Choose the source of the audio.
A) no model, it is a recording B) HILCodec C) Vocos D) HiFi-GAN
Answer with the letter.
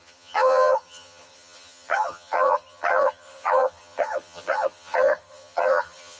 D